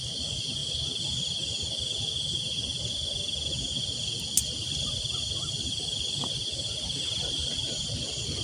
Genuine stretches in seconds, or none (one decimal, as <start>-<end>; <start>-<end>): 0.0-4.6; 6.2-8.4